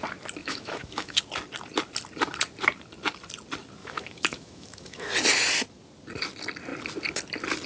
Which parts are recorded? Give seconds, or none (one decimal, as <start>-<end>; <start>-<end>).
0.0-0.4; 1.2-3.8; 5.1-7.7